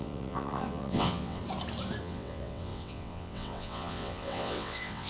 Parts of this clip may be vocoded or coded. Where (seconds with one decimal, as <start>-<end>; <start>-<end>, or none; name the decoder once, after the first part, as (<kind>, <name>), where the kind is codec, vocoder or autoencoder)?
0.0-1.4 (vocoder, WaveNeXt); 2.0-5.1